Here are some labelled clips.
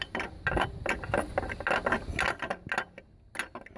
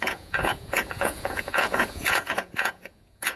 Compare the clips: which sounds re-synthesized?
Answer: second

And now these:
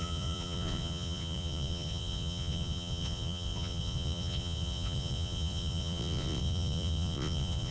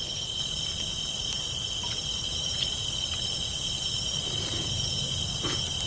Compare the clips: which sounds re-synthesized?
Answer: first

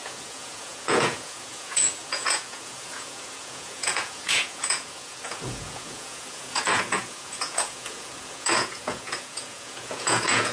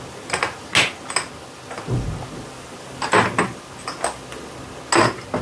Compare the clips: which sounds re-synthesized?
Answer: first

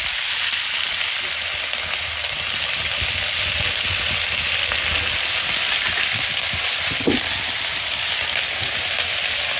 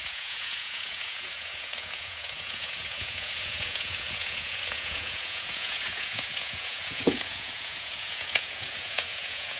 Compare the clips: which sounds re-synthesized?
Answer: second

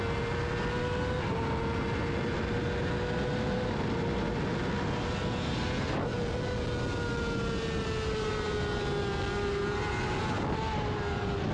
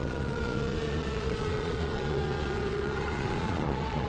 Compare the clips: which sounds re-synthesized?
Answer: second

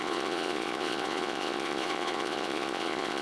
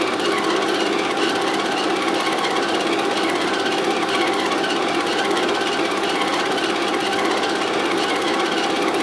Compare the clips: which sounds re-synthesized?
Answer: first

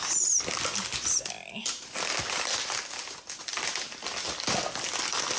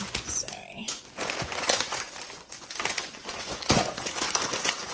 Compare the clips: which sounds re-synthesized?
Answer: second